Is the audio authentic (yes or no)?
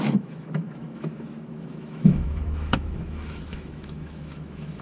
no